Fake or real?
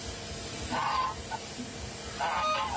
real